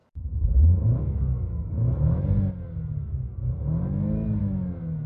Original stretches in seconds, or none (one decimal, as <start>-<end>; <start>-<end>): 2.2-4.4